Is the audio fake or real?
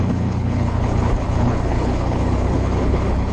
fake